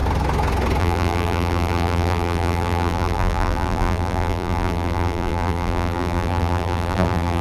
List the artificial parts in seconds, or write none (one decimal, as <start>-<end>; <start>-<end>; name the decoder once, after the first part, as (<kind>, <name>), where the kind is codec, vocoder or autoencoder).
0.8-7.4 (vocoder, BigVGAN v2)